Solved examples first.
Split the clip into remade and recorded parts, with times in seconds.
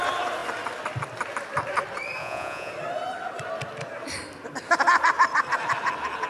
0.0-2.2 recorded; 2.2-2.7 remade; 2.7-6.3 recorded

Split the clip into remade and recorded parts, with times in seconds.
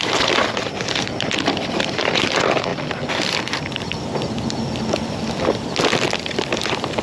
0.0-7.0 recorded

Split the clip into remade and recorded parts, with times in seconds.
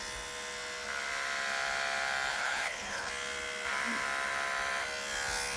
0.0-2.3 recorded; 2.3-3.1 remade; 3.1-5.6 recorded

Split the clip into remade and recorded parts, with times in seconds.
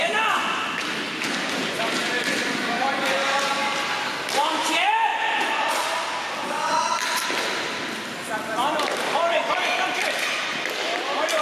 0.0-5.1 recorded; 5.1-5.7 remade; 5.7-11.4 recorded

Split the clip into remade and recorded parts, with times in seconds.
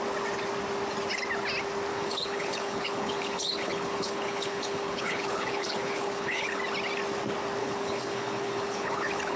0.0-1.9 recorded; 1.9-6.6 remade; 6.6-7.6 recorded; 7.6-9.4 remade